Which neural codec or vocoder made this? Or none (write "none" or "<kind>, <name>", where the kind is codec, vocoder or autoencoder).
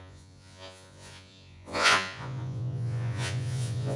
vocoder, Vocos